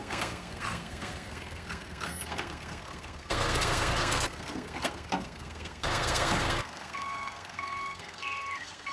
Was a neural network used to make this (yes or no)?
yes